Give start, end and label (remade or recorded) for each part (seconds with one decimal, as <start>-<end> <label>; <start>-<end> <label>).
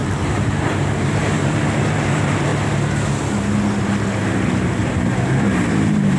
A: 0.0-2.5 remade; 2.5-5.7 recorded; 5.7-6.2 remade